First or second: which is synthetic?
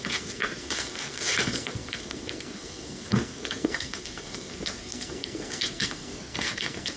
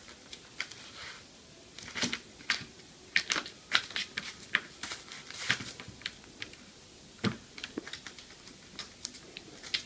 first